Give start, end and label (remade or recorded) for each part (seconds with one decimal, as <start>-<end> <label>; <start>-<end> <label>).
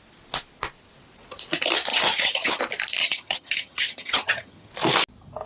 0.0-1.9 recorded; 1.9-2.6 remade; 2.6-3.0 recorded; 3.0-4.7 remade; 4.7-5.5 recorded